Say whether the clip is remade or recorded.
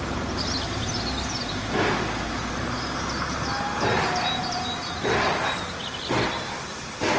recorded